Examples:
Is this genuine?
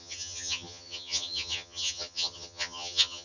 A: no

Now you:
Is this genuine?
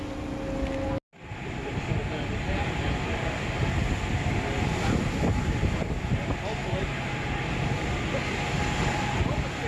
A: yes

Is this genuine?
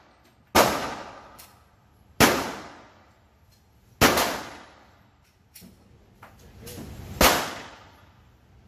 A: yes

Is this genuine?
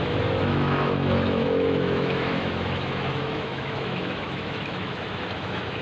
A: no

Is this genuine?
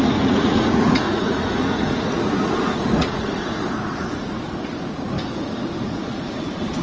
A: no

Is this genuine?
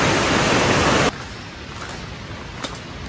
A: yes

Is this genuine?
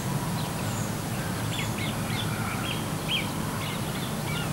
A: yes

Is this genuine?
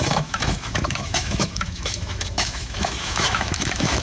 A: no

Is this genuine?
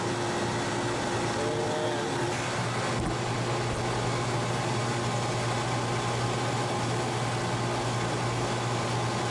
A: yes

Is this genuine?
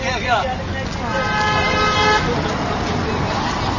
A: yes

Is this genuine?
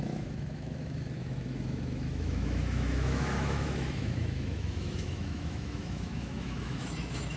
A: no